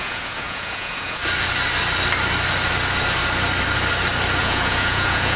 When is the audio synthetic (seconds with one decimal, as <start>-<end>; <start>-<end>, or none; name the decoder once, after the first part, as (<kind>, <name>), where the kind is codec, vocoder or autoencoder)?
0.0-1.2 (vocoder, Vocos); 4.4-5.4